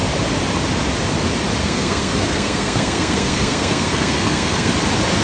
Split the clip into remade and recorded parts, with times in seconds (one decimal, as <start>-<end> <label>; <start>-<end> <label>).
0.0-1.6 recorded; 1.6-4.7 remade; 4.7-5.2 recorded